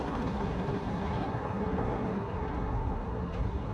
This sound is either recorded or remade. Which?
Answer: remade